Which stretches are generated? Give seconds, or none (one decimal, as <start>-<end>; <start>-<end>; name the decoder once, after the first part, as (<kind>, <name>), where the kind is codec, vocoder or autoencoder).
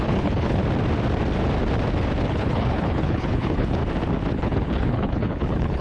0.0-0.6 (codec, HILCodec); 2.3-3.8; 4.3-5.8